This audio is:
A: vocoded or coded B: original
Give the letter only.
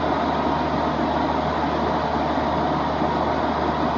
B